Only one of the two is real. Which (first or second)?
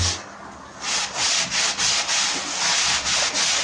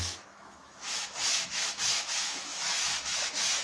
first